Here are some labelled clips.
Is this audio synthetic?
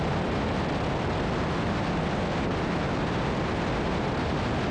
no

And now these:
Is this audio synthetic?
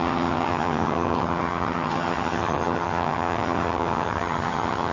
yes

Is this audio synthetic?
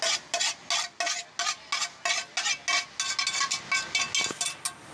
no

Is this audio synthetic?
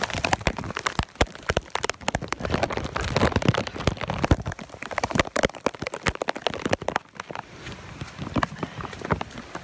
yes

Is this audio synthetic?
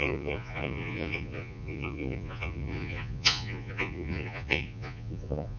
yes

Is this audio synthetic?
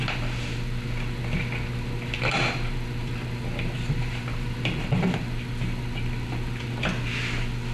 no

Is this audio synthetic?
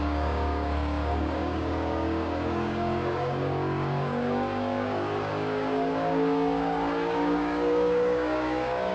yes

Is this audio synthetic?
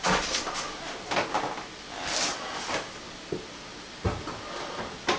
no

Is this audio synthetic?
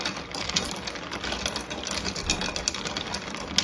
no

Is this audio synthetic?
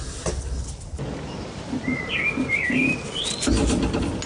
no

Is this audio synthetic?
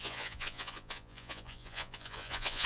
yes